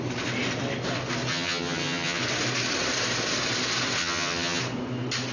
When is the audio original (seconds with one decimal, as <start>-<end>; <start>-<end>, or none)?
0.0-1.3; 2.2-4.0; 4.6-5.3